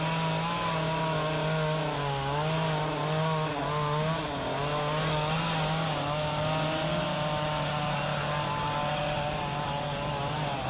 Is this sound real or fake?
real